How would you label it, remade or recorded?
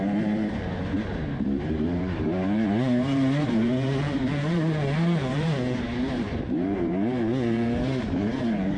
remade